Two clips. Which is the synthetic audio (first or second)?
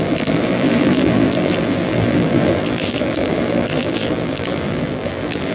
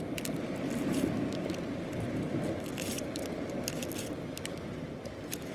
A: first